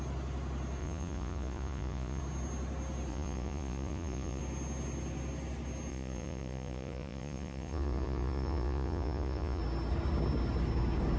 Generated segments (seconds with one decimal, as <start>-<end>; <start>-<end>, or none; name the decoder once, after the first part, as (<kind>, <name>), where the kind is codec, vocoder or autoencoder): 0.8-2.2 (vocoder, Vocos); 3.1-4.4; 5.9-9.6